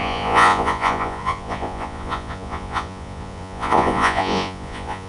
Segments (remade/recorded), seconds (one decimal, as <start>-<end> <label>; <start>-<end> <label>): 0.0-5.1 remade